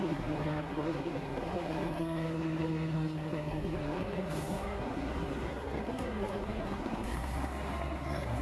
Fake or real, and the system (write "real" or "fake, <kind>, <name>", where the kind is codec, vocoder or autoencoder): fake, codec, SNAC